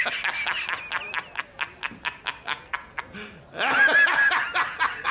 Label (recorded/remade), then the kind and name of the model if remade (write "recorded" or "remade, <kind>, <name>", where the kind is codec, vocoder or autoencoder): recorded